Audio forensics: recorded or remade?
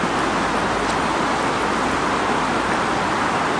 recorded